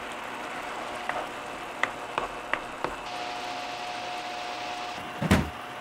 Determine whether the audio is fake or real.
real